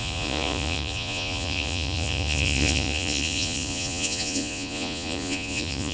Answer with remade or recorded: remade